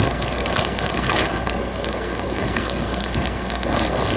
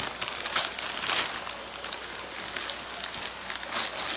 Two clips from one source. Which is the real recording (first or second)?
second